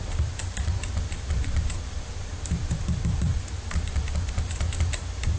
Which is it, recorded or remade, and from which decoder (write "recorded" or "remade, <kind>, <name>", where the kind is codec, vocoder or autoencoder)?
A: remade, vocoder, BigVGAN v2